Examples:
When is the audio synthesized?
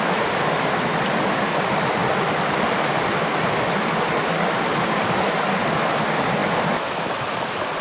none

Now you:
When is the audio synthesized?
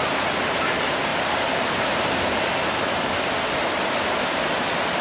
none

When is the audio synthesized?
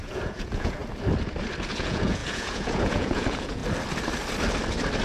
0.0-0.8 (vocoder, Vocos); 1.7-3.6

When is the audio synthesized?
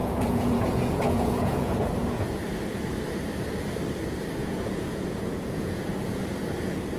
0.0-1.9 (vocoder, Vocos); 4.4-5.9